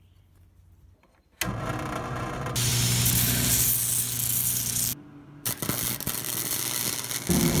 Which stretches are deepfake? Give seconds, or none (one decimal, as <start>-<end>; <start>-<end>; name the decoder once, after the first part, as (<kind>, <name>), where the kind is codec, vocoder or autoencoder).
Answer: none

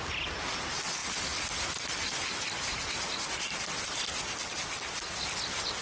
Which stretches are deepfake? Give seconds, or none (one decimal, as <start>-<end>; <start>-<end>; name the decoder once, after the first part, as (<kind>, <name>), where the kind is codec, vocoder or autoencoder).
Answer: none

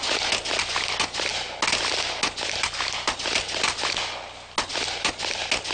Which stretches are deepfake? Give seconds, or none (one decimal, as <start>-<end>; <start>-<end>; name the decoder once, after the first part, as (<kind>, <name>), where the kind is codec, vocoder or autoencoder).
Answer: none

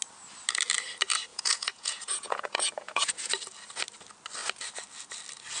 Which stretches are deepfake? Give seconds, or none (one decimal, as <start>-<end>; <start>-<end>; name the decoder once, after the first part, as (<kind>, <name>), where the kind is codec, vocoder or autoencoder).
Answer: 1.3-3.3 (vocoder, Vocos)

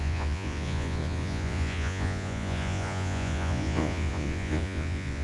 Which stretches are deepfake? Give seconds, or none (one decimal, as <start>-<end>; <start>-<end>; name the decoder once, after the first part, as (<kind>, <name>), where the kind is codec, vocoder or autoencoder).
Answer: 0.0-5.2 (vocoder, Vocos)

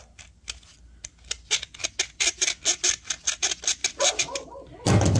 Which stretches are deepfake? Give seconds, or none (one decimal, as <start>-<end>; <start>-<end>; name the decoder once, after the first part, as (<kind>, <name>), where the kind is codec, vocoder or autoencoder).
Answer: none

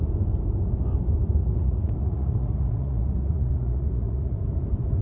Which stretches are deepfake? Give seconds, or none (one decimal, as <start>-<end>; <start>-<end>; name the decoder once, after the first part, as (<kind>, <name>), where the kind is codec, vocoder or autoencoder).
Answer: 1.4-4.4 (vocoder, Vocos)